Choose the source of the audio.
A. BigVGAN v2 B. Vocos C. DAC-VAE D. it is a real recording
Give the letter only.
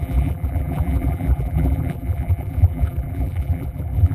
A